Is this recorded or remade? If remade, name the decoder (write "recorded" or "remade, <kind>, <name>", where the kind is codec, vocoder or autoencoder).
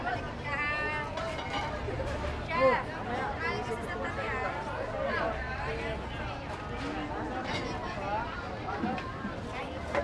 recorded